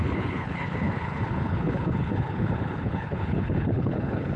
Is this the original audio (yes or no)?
no